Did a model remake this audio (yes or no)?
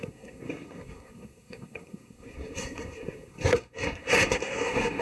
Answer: yes